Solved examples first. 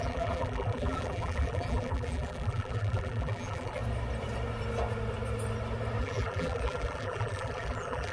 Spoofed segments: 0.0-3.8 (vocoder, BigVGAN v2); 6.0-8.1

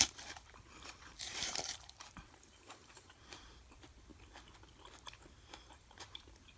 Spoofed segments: 0.0-4.1 (vocoder, BigVGAN v2); 5.7-6.6